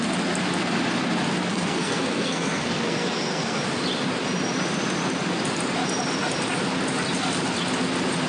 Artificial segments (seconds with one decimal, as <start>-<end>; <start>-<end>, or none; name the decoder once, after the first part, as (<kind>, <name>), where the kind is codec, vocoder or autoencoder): 1.5-3.6 (codec, SNAC)